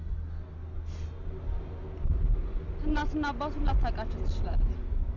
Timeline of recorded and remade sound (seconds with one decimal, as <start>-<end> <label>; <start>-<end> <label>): 0.0-5.2 recorded